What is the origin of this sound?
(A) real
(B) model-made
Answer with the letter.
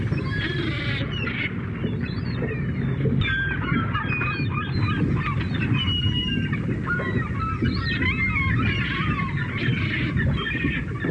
A